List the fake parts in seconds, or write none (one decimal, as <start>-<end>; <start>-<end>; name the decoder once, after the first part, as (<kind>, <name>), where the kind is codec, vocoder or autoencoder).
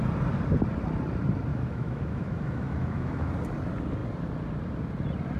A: 1.5-3.3 (autoencoder, DAC-VAE)